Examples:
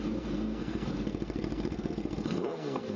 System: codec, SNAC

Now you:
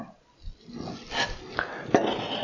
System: none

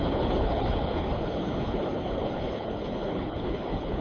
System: codec, HILCodec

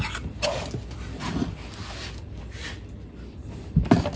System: none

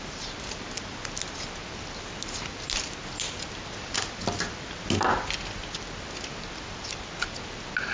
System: none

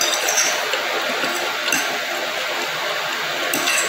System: none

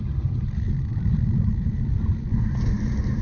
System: vocoder, BigVGAN v2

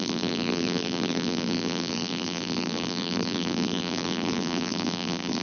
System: vocoder, BigVGAN v2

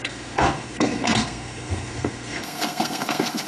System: codec, SNAC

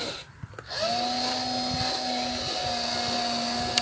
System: none